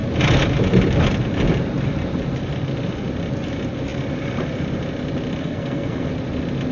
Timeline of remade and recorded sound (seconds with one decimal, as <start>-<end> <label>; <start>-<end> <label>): 0.0-5.4 recorded; 5.4-6.1 remade; 6.1-6.7 recorded